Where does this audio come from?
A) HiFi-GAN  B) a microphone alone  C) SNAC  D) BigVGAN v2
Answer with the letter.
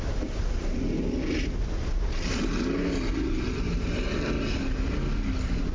B